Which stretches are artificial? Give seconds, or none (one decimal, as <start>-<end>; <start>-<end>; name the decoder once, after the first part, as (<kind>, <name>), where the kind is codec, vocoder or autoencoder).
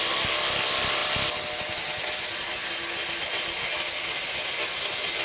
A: none